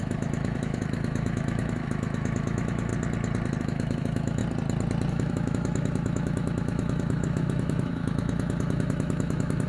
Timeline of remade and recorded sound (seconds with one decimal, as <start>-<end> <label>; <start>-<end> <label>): 0.0-2.9 remade; 2.9-3.6 recorded; 3.6-4.4 remade; 4.4-5.1 recorded; 5.1-9.7 remade